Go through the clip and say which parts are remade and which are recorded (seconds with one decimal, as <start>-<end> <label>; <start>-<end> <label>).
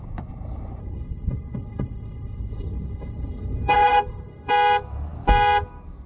0.0-0.8 recorded; 0.8-4.5 remade; 4.5-6.1 recorded